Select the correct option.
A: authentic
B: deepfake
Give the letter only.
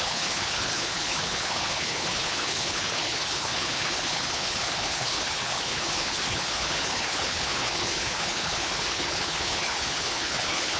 B